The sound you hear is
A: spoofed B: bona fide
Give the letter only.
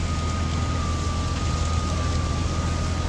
B